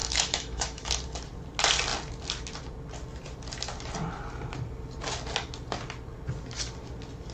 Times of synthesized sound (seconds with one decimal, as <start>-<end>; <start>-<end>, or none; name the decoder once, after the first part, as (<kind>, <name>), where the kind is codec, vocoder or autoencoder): 0.0-0.9 (autoencoder, DAC-VAE)